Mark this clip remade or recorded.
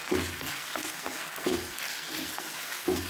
remade